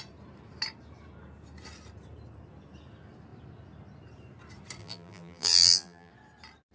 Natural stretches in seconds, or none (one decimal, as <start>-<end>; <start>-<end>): 0.0-4.8; 6.1-6.7